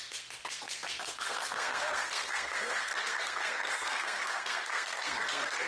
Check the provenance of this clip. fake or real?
fake